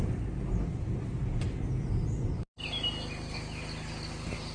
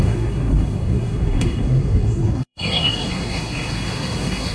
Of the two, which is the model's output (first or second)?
second